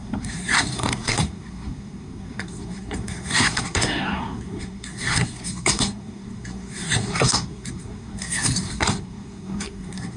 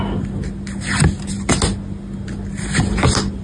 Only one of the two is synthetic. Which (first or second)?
first